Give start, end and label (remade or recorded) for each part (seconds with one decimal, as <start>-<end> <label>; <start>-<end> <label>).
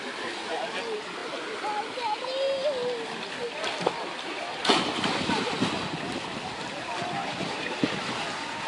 0.0-8.7 recorded